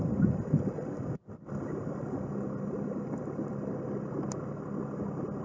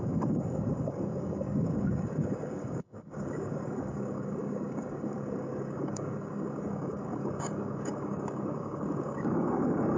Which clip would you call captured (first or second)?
first